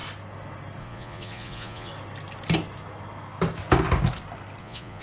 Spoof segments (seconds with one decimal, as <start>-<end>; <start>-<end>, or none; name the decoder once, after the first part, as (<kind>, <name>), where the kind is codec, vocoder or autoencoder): 0.8-1.9 (vocoder, Vocos); 4.6-5.0